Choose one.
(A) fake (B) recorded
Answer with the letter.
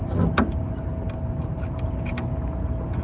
B